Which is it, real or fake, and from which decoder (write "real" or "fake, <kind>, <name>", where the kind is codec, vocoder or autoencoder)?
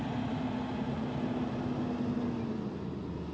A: real